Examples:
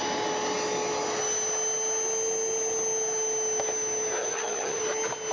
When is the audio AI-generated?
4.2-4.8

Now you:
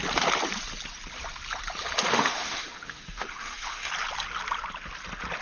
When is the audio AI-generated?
2.1-3.9